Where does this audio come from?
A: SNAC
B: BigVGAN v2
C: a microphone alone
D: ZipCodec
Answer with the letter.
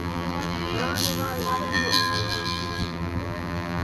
B